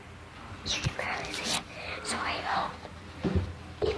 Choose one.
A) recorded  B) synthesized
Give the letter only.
A